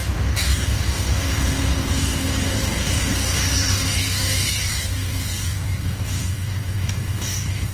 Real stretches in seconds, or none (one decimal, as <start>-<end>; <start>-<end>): none